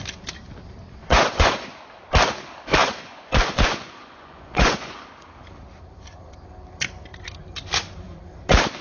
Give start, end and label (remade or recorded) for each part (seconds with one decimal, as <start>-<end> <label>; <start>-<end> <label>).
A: 0.0-1.0 recorded; 1.0-1.8 remade; 1.8-2.8 recorded; 2.8-5.1 remade; 5.1-8.8 recorded